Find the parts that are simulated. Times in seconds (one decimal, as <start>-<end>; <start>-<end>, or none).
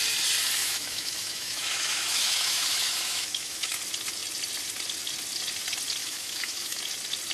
0.6-3.8; 6.0-6.8